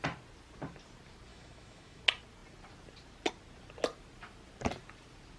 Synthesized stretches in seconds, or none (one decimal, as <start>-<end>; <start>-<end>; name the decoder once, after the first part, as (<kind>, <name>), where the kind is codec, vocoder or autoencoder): 1.3-2.0 (autoencoder, DAC-VAE)